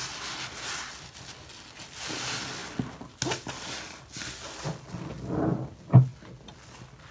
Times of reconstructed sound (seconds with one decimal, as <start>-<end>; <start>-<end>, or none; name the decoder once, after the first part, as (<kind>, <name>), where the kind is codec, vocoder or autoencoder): none